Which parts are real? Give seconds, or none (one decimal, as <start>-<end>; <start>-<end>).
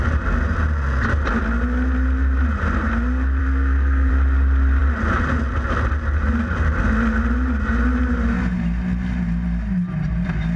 0.0-3.4; 4.1-10.6